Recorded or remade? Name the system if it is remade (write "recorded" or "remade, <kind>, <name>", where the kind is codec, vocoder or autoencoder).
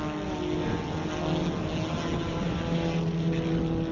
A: recorded